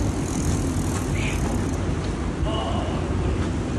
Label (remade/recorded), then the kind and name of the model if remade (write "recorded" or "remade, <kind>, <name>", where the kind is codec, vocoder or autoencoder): recorded